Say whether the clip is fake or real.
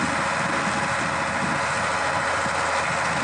real